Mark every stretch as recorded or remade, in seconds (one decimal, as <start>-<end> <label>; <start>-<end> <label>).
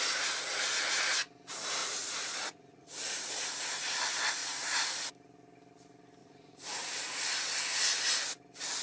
0.0-1.8 recorded; 1.8-3.6 remade; 3.6-4.4 recorded; 4.4-5.1 remade; 5.1-6.2 recorded; 6.2-6.8 remade; 6.8-8.8 recorded